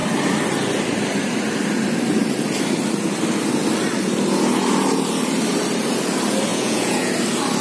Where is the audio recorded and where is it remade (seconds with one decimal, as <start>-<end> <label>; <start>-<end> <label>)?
0.0-6.5 recorded; 6.5-7.1 remade; 7.1-7.6 recorded